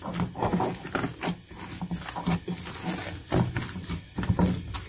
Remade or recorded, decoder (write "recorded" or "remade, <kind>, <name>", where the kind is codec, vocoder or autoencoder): recorded